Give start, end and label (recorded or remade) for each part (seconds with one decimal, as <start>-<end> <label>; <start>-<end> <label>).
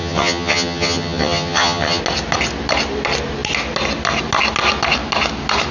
0.0-2.0 remade; 2.0-5.7 recorded